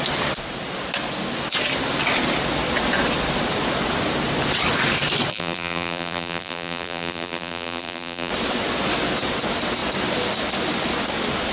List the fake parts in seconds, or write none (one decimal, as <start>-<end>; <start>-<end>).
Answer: 5.3-8.3